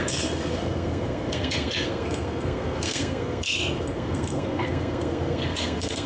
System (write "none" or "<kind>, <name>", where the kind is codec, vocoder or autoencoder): codec, SNAC